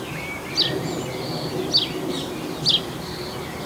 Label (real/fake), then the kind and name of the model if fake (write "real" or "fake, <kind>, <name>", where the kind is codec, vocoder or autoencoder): real